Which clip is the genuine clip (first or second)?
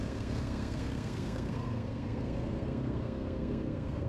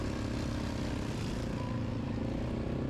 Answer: second